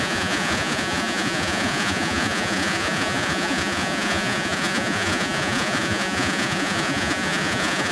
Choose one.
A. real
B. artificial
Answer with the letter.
B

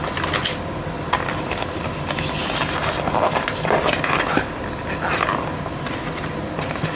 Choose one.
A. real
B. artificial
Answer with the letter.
A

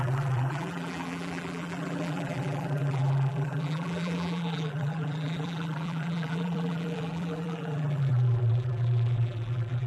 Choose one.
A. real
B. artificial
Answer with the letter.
B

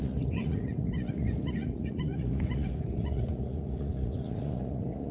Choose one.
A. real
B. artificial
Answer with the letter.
B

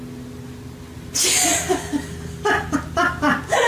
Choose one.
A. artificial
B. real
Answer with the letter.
B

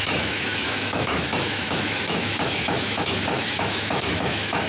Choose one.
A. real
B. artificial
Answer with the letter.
B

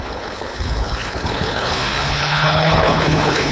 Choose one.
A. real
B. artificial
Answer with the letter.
B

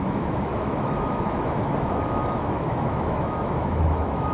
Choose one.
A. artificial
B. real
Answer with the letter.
A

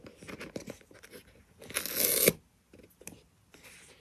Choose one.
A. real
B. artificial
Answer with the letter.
A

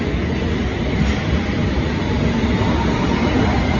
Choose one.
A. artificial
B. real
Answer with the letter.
B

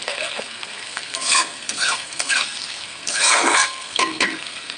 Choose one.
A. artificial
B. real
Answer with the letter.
A